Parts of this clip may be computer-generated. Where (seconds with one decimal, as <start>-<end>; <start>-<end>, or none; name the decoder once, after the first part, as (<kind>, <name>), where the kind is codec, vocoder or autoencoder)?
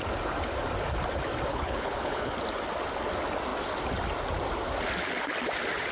1.5-2.3 (codec, HILCodec)